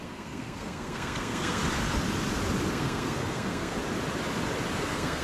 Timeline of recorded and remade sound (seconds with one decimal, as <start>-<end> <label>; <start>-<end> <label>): 0.0-1.6 remade; 1.6-2.7 recorded; 2.7-3.8 remade; 3.8-4.8 recorded; 4.8-5.2 remade